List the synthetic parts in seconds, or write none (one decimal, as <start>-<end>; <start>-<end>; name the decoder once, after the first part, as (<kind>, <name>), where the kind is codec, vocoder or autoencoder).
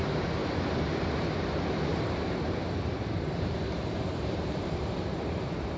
0.4-1.3 (vocoder, BigVGAN v2); 1.9-5.8